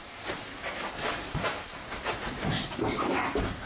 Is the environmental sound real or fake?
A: fake